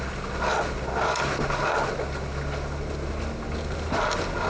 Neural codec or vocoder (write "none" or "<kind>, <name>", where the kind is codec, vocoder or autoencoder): none